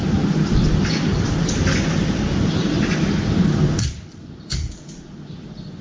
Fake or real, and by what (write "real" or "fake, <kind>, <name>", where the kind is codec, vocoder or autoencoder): real